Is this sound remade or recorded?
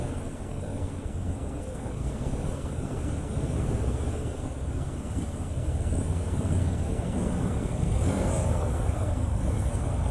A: remade